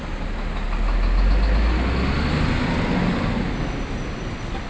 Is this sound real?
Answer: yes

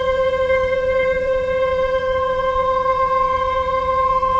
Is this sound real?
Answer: no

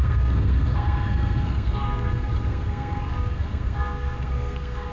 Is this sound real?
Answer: no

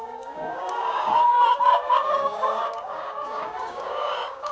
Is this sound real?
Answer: no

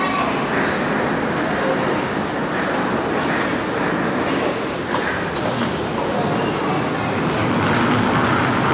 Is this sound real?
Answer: yes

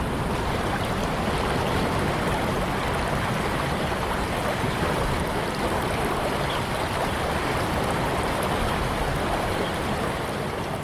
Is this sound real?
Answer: yes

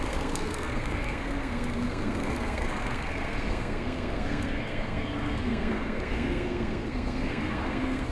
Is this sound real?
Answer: no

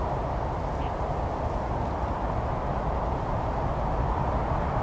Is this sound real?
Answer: yes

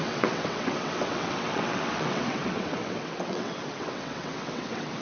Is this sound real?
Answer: no